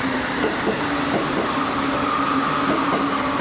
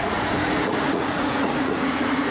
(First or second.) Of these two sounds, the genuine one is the first